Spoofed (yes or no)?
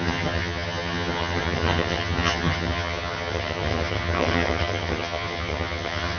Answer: yes